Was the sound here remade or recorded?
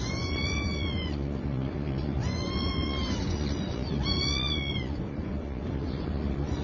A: remade